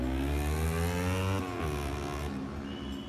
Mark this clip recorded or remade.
recorded